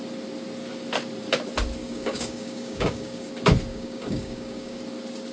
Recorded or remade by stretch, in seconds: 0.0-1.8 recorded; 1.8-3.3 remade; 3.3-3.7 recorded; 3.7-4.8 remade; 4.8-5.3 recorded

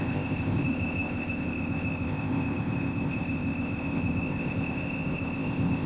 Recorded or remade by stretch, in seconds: 0.0-5.9 remade

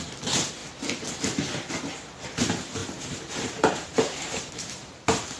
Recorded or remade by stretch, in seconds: 0.0-2.8 recorded; 2.8-4.5 remade; 4.5-5.4 recorded

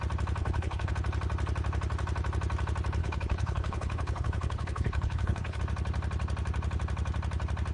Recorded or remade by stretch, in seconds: 0.0-0.4 recorded; 0.4-0.9 remade; 0.9-3.0 recorded; 3.0-5.6 remade; 5.6-7.7 recorded

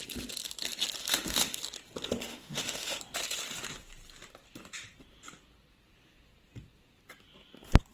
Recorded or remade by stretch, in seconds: 0.0-1.0 recorded; 1.0-1.6 remade; 1.6-2.3 recorded; 2.3-3.0 remade; 3.0-7.9 recorded

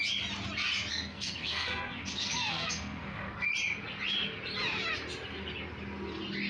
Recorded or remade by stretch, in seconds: 0.0-0.9 recorded; 0.9-3.5 remade; 3.5-6.5 recorded